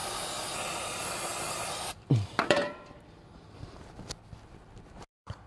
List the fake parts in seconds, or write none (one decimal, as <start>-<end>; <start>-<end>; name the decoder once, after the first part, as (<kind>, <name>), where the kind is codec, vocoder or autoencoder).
2.1-2.6 (vocoder, BigVGAN v2); 5.0-5.5